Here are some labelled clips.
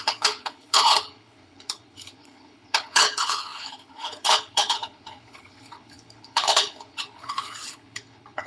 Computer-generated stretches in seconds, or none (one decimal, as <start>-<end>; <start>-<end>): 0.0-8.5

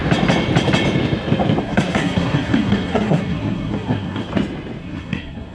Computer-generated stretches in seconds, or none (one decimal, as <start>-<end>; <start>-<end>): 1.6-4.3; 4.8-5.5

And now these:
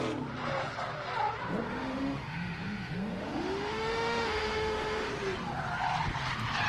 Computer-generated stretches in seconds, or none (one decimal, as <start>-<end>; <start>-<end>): 1.7-5.1